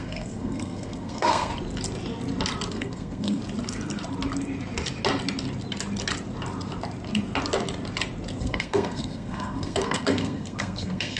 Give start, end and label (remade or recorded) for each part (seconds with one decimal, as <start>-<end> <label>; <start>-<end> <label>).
0.0-1.5 remade; 1.5-2.7 recorded; 2.7-3.4 remade; 3.4-8.4 recorded; 8.4-11.2 remade